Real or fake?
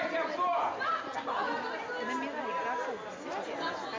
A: real